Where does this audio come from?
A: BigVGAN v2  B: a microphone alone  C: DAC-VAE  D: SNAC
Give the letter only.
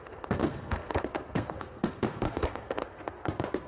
D